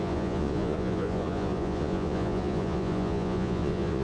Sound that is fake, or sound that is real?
fake